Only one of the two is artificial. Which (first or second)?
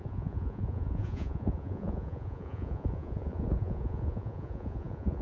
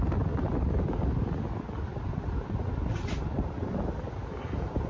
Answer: first